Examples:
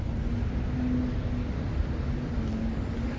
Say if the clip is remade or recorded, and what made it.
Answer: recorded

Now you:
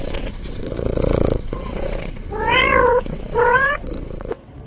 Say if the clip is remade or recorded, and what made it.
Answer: remade, vocoder, WaveNeXt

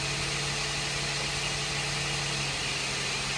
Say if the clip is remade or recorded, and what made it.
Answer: recorded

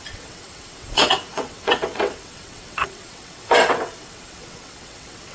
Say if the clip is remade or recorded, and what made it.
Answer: remade, vocoder, WaveNeXt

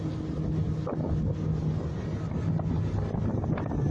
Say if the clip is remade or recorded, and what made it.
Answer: recorded